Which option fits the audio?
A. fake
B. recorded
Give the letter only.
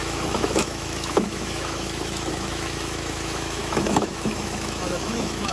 A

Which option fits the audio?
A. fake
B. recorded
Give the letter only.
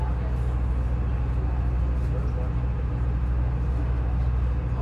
B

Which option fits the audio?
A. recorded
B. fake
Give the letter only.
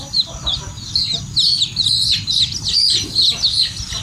A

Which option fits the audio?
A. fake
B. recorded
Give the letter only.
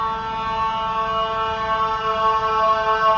B